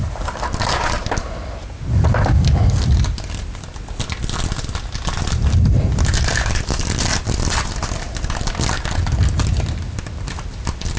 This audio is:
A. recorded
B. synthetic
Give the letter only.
A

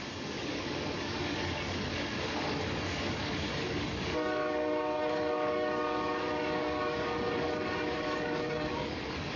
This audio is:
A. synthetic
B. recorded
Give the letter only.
A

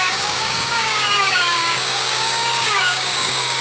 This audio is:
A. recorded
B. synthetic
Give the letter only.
B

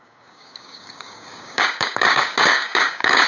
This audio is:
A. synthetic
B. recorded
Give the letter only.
A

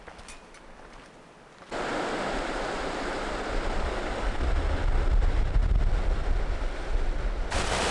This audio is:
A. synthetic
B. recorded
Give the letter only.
B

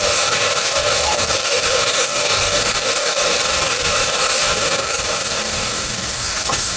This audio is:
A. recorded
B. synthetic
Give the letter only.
B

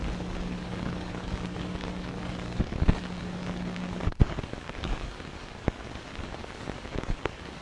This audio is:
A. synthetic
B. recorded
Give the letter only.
A